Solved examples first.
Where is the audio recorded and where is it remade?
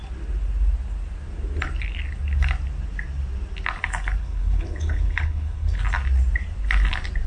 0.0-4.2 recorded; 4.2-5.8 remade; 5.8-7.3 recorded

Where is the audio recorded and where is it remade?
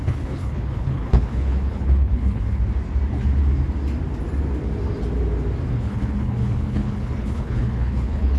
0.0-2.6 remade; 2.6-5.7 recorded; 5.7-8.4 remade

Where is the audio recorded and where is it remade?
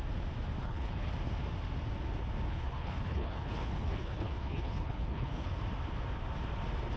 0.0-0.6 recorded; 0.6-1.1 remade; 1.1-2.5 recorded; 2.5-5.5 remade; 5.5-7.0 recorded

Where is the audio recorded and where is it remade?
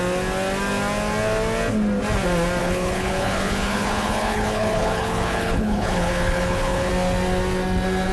0.0-2.6 recorded; 2.6-6.9 remade; 6.9-8.1 recorded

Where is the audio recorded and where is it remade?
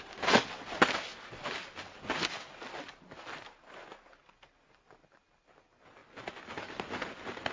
0.0-7.5 recorded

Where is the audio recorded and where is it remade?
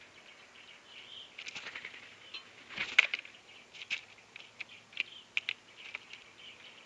0.0-6.9 recorded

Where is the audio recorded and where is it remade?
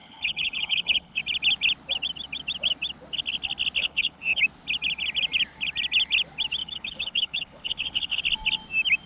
0.0-1.2 remade; 1.2-3.8 recorded; 3.8-4.4 remade; 4.4-6.6 recorded; 6.6-8.2 remade; 8.2-9.1 recorded